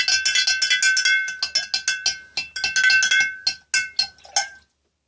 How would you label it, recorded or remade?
recorded